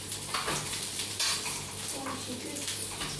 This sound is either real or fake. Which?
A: fake